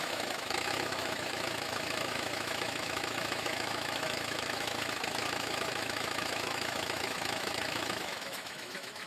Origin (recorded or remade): remade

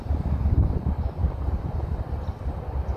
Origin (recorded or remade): remade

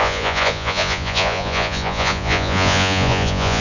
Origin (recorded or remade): remade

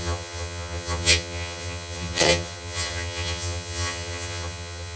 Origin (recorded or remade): remade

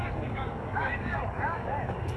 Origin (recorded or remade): remade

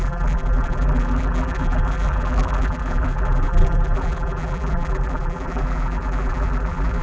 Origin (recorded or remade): remade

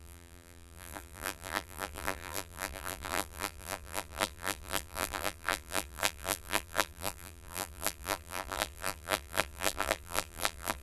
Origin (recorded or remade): remade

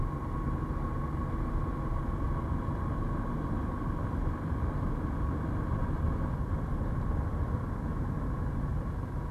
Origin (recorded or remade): recorded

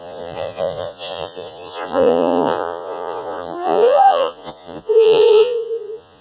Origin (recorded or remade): remade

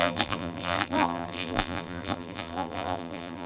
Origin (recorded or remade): remade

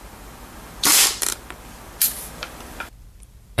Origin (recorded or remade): remade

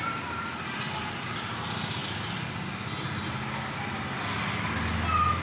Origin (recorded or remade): recorded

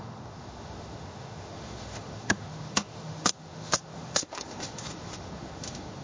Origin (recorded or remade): remade